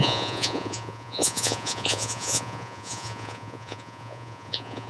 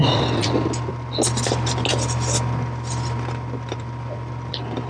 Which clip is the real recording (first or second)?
second